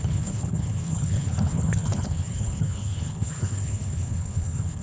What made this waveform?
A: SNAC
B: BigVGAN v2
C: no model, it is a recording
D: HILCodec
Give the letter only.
D